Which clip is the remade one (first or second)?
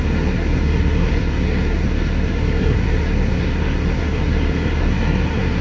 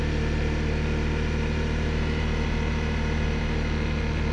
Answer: first